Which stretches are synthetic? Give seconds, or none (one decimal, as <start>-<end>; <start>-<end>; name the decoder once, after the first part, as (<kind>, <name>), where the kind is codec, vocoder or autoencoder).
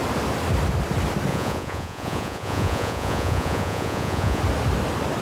1.3-4.4 (vocoder, Vocos)